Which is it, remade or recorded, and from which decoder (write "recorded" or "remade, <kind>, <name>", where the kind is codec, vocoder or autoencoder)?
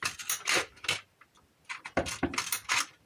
recorded